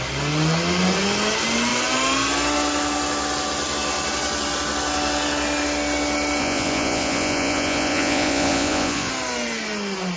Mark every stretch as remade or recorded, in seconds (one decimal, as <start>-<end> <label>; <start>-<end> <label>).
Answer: 0.0-6.4 recorded; 6.4-9.1 remade; 9.1-10.2 recorded